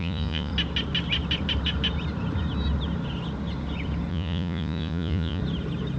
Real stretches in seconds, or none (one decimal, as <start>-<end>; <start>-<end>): 0.5-4.1; 5.4-6.0